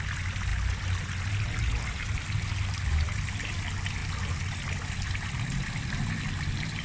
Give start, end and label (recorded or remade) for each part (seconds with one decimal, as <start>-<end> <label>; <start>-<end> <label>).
0.0-6.8 recorded